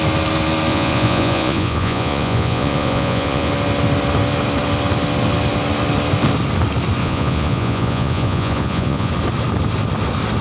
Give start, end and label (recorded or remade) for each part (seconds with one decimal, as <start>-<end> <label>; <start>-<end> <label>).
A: 0.0-0.7 recorded; 0.7-3.5 remade; 3.5-7.0 recorded; 7.0-9.1 remade; 9.1-10.4 recorded